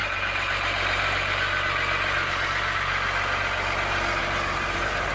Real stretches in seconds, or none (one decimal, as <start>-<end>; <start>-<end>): 2.4-4.2